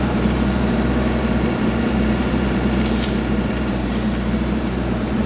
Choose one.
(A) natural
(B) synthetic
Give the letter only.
B